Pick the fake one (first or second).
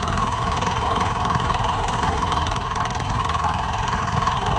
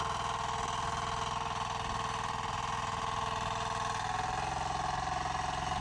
first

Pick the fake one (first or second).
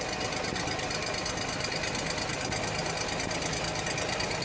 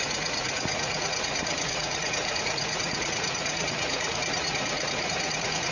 second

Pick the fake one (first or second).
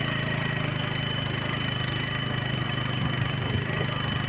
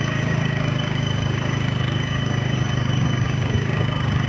second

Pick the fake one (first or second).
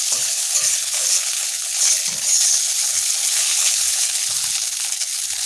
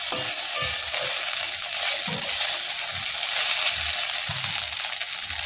first